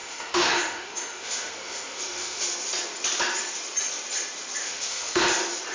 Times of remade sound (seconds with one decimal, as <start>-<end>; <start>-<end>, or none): 0.0-2.4; 4.6-5.2